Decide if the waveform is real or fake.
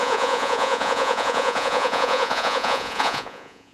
fake